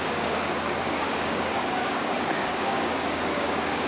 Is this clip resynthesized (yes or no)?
yes